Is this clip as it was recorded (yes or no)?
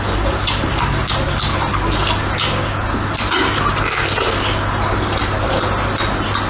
yes